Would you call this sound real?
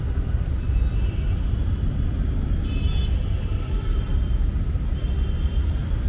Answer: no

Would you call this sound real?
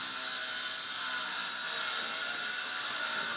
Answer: yes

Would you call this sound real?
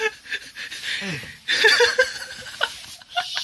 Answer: yes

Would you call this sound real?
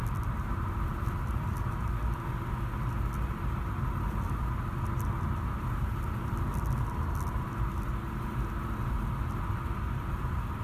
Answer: yes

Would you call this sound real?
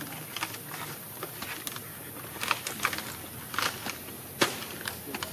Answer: yes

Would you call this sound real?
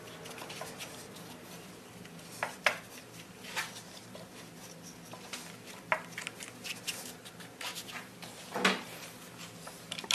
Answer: yes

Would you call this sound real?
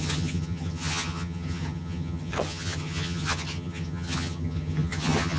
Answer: no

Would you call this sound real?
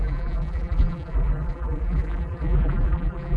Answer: no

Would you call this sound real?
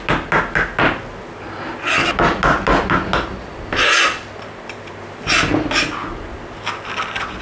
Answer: yes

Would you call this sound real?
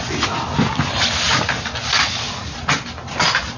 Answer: yes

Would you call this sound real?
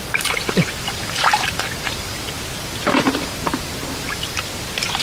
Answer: no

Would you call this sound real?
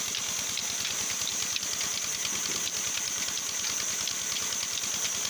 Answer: yes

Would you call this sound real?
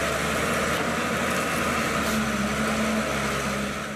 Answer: yes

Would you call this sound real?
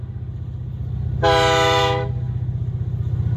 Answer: yes